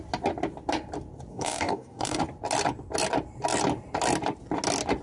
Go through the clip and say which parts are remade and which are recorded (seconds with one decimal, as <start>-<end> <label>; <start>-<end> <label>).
0.0-1.3 recorded; 1.3-2.2 remade; 2.2-5.0 recorded